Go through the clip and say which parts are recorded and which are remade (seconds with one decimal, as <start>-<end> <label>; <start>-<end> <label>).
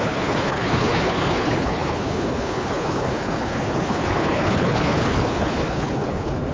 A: 0.0-6.5 remade